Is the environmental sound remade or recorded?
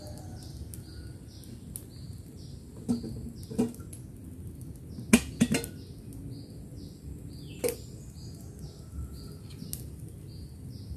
recorded